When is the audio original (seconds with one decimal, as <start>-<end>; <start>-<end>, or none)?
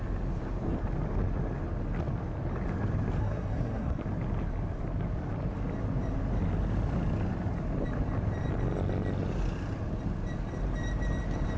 0.0-3.2; 4.0-11.6